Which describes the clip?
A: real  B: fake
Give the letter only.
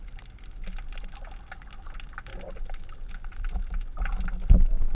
A